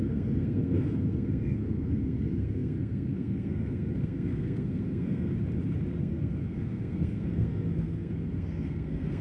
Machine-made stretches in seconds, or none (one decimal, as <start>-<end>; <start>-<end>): 0.0-5.3; 6.0-9.2